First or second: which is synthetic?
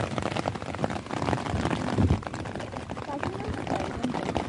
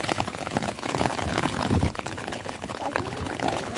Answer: second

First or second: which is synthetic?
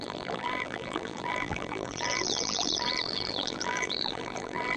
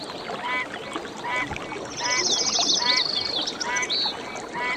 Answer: first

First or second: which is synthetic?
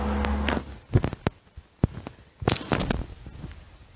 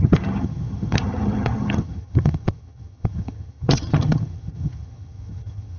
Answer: second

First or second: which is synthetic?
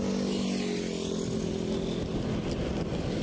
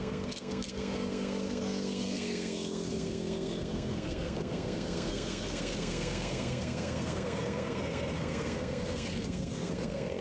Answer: second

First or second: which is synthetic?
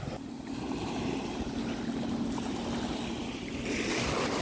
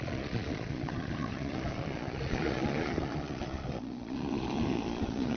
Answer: second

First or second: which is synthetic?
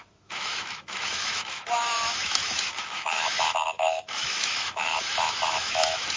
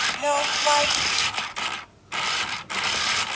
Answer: first